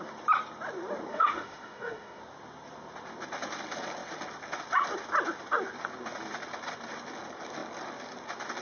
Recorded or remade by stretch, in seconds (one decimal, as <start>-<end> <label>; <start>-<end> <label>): 0.0-1.1 recorded; 1.1-2.2 remade; 2.2-8.6 recorded